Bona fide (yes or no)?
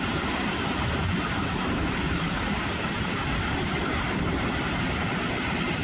no